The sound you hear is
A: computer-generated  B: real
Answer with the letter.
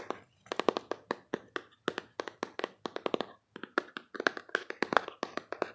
B